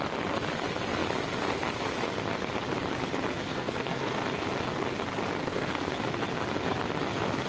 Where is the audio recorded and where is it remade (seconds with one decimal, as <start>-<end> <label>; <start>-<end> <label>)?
0.0-3.5 recorded; 3.5-4.2 remade; 4.2-5.4 recorded; 5.4-6.0 remade; 6.0-7.5 recorded